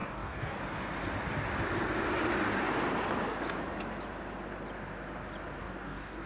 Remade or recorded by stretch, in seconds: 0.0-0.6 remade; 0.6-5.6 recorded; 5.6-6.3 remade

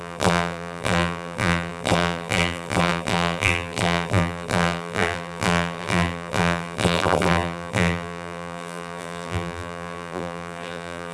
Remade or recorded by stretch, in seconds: 0.0-11.1 remade